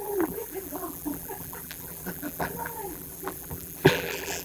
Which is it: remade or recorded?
remade